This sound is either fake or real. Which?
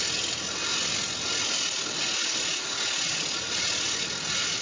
real